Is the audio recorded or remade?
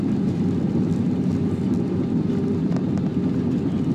recorded